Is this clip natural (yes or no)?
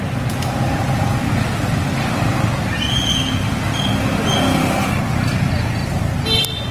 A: yes